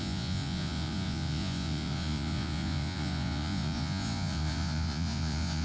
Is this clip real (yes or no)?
no